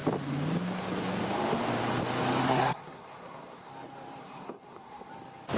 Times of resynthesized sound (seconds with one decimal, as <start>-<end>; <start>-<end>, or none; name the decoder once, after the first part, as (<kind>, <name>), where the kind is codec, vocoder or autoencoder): 2.4-3.7 (codec, SNAC); 4.2-5.1